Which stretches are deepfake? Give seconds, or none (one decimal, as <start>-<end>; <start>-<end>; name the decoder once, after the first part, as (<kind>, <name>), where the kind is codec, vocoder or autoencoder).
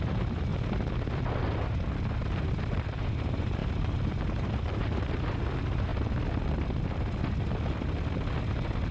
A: 0.0-0.5 (vocoder, BigVGAN v2); 2.2-5.9